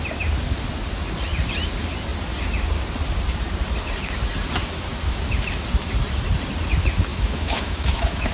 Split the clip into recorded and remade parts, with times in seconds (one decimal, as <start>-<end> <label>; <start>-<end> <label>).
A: 0.0-7.1 recorded; 7.1-8.3 remade